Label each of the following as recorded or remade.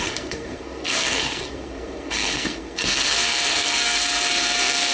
remade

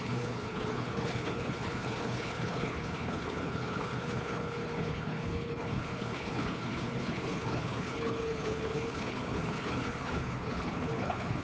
remade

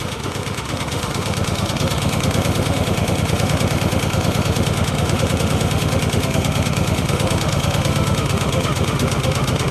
remade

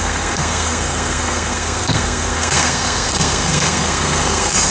remade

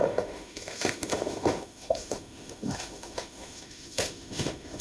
remade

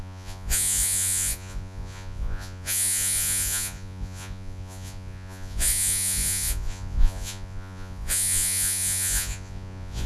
remade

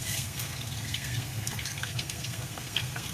remade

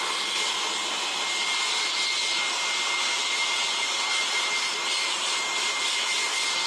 recorded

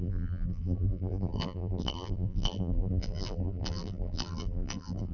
remade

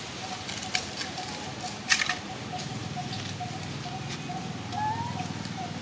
recorded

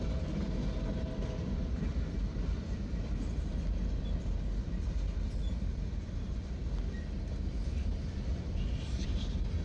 recorded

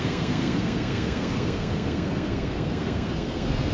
remade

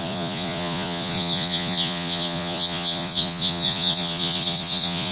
remade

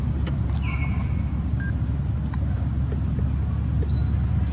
recorded